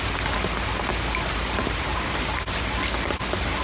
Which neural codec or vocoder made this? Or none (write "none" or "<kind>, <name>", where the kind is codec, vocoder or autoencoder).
none